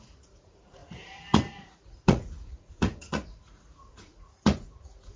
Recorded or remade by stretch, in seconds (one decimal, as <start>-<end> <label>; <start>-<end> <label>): 0.0-5.2 remade